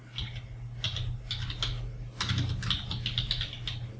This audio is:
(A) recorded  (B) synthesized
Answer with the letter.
A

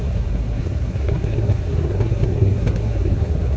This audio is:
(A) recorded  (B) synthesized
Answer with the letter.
B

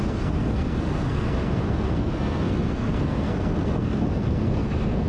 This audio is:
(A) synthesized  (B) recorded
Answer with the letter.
A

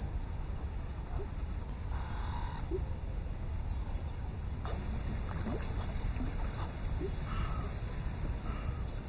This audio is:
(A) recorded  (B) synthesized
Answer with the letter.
A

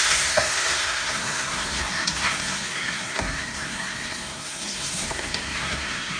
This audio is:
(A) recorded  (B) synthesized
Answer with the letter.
B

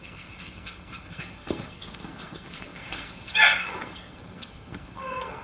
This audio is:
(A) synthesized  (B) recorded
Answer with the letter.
A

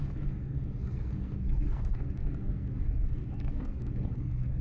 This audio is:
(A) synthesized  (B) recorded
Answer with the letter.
A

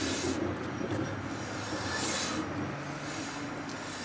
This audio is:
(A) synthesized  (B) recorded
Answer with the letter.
B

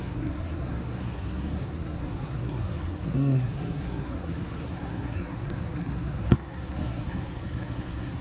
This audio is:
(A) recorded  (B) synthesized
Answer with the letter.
B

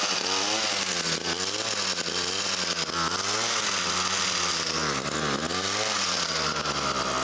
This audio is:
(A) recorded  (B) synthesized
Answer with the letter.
A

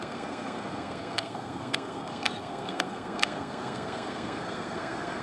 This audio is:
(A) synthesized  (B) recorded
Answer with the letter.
A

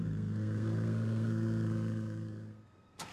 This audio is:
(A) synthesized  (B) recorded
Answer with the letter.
A